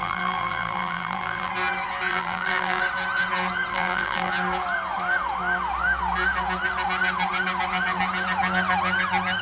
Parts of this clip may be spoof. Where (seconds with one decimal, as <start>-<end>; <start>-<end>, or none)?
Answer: 0.0-1.5; 2.1-2.8; 3.7-4.3